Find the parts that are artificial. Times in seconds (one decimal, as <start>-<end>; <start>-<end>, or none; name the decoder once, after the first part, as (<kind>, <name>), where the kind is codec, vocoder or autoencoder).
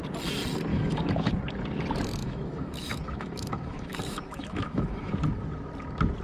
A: 0.7-1.3 (autoencoder, DAC-VAE); 2.2-5.1